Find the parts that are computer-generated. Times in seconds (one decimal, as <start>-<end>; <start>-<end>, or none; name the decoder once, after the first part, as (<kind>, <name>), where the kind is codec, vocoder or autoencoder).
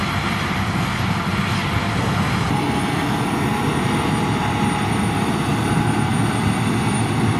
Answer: none